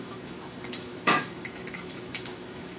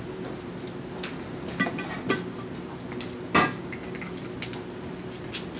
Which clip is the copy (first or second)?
first